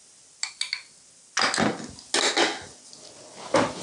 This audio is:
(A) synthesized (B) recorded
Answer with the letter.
B